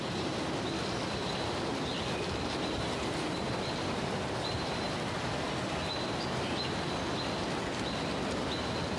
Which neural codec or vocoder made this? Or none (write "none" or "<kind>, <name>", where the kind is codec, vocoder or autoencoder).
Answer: none